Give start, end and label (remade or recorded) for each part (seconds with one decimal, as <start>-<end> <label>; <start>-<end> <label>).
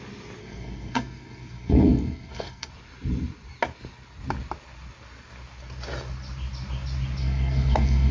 0.0-0.4 recorded; 0.4-2.7 remade; 2.7-7.2 recorded; 7.2-8.1 remade